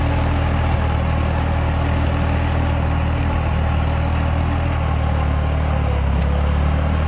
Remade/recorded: recorded